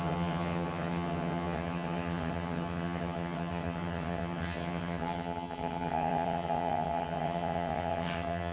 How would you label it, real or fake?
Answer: fake